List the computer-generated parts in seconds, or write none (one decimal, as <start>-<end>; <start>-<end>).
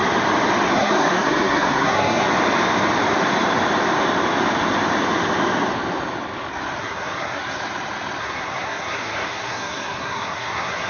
0.7-2.3; 6.8-7.4; 8.2-10.9